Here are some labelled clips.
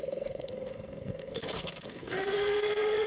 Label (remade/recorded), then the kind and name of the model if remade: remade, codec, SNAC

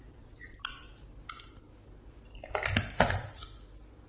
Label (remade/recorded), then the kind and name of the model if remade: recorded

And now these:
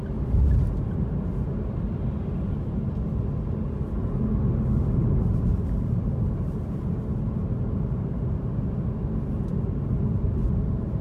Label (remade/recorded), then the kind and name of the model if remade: recorded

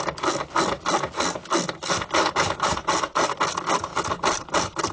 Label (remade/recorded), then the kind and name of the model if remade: recorded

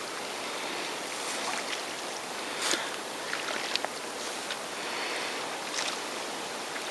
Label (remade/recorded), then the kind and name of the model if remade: recorded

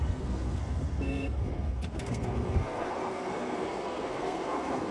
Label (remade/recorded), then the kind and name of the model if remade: remade, codec, SNAC